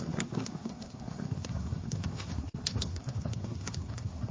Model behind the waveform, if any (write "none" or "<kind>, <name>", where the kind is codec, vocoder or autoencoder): codec, SNAC